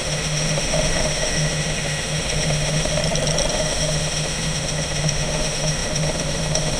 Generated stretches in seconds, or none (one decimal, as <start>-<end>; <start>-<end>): 0.0-3.0; 3.5-6.8